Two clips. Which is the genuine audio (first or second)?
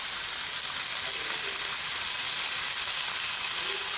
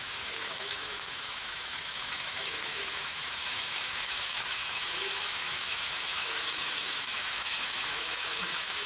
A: first